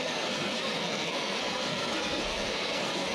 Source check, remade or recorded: remade